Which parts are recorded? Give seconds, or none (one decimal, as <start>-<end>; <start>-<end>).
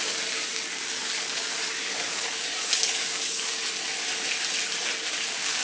3.6-5.1